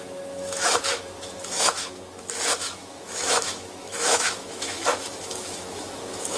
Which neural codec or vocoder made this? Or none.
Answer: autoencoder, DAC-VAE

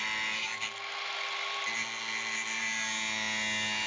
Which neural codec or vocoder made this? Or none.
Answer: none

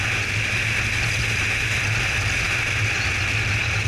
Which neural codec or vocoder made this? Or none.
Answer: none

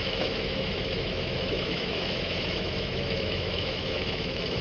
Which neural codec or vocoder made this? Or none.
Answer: autoencoder, DAC-VAE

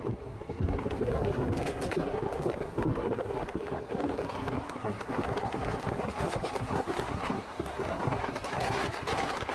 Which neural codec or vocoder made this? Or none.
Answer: codec, SNAC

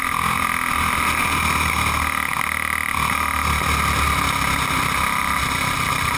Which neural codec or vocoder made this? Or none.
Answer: none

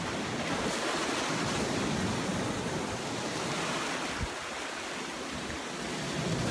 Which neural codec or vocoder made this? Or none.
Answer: none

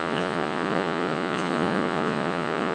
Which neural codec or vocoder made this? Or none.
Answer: vocoder, Vocos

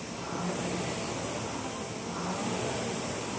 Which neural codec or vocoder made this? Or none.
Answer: none